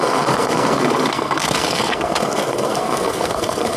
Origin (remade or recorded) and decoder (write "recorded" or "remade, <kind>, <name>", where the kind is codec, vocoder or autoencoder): remade, codec, SNAC